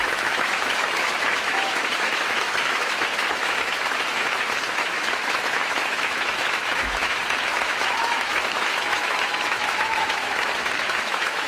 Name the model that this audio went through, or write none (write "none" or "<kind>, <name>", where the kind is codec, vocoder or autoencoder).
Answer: autoencoder, DAC-VAE